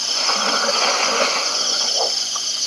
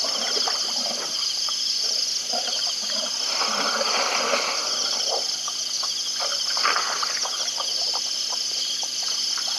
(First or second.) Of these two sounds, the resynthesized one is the first